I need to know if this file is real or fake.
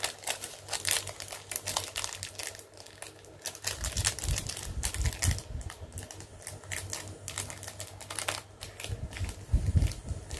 real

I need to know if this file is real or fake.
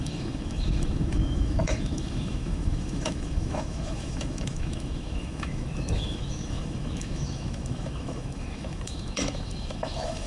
fake